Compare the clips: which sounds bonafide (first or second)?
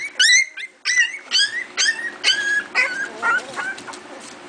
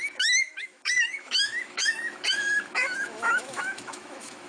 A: first